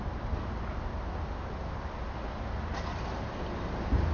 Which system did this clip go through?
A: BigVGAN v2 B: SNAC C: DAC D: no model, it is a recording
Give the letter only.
D